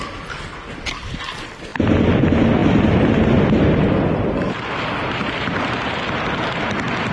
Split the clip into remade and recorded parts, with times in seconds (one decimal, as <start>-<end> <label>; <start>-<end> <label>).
0.0-7.1 recorded